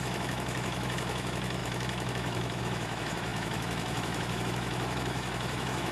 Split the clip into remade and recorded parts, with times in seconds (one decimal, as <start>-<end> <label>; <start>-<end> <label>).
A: 0.0-5.9 remade